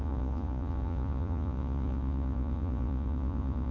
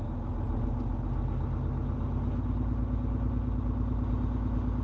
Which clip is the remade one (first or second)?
first